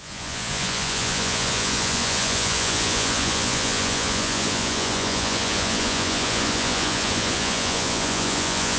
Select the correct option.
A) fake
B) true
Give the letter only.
A